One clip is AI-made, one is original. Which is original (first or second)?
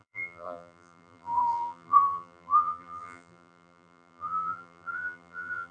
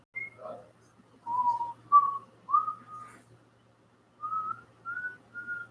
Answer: second